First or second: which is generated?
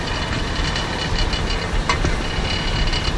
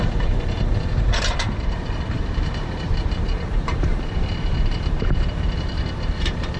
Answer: second